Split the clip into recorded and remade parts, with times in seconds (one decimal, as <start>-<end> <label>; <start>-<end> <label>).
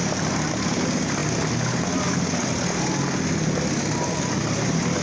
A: 0.0-5.0 recorded